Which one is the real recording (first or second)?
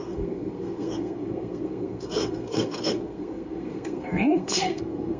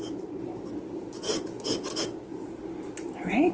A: second